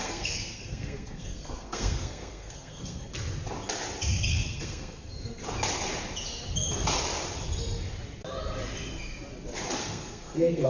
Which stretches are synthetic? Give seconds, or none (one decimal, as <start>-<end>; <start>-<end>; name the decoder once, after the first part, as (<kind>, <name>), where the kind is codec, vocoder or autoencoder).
0.0-3.1 (codec, SNAC); 4.3-5.4; 9.8-10.7